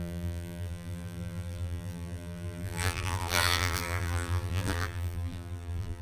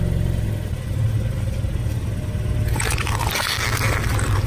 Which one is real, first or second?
second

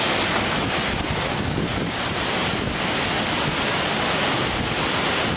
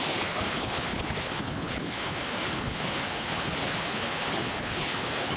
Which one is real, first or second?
first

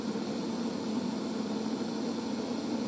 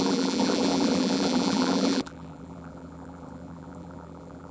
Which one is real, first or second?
first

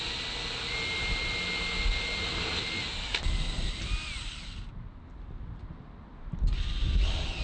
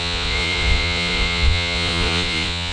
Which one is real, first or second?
first